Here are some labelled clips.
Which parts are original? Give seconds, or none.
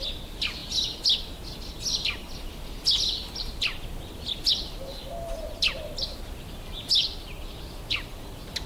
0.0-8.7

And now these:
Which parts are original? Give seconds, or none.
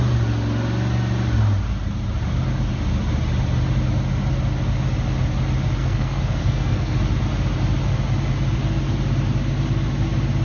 0.0-5.8; 7.0-10.4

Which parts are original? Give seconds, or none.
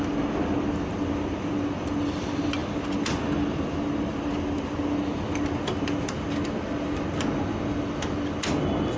0.0-9.0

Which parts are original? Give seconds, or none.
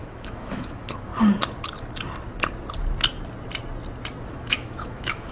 1.1-4.3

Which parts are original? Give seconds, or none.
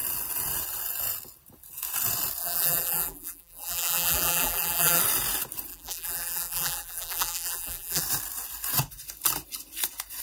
0.0-2.4; 5.0-5.7; 8.0-10.2